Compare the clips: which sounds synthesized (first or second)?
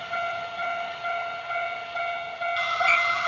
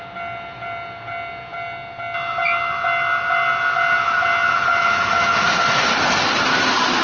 first